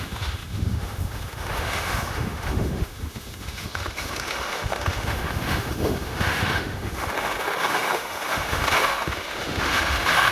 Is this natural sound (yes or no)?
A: no